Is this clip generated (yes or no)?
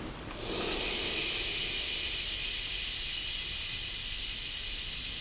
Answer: no